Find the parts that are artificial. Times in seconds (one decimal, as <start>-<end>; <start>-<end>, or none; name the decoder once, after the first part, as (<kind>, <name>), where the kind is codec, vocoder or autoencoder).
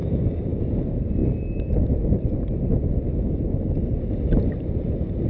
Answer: 0.0-0.6 (codec, DAC)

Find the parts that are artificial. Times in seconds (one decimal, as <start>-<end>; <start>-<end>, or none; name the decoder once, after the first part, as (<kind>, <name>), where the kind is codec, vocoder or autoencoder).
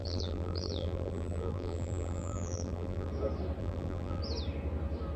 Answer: 0.0-3.1 (vocoder, BigVGAN v2); 3.6-4.2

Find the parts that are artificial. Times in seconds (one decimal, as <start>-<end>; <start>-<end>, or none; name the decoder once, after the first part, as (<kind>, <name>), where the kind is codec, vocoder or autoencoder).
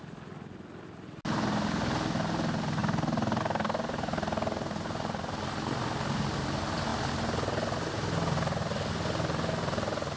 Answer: none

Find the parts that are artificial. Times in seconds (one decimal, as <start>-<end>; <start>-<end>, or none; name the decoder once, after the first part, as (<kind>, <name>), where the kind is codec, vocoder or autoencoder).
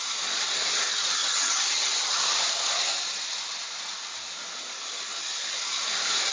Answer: 1.2-2.2 (vocoder, HiFi-GAN)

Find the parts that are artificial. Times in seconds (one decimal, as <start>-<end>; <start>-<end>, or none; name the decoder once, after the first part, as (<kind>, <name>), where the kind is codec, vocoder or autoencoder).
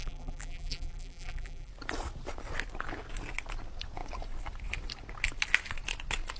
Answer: 0.0-1.7 (vocoder, BigVGAN v2)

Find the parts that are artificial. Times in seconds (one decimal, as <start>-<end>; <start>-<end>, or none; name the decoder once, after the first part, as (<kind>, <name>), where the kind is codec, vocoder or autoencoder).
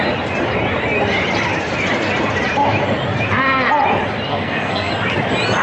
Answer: 4.3-4.9 (codec, SNAC)